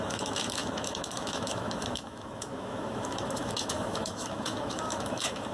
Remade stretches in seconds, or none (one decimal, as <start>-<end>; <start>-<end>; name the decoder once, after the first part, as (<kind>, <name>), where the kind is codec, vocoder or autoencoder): 0.0-5.5 (autoencoder, DAC-VAE)